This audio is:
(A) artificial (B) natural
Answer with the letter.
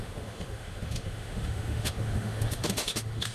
A